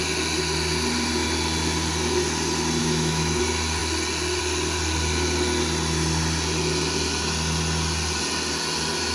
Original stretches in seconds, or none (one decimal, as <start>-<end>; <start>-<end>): 0.0-2.8; 3.4-9.1